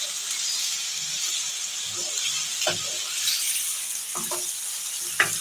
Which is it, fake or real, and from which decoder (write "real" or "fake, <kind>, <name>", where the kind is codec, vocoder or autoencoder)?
real